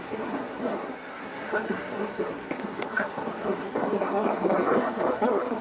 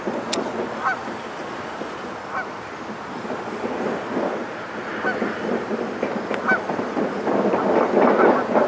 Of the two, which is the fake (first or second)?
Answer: first